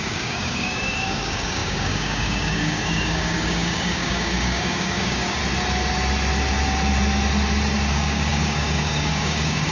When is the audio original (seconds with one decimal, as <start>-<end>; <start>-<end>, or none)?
5.4-7.9